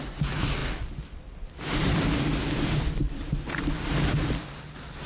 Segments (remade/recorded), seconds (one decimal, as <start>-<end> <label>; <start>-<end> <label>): 0.0-5.1 recorded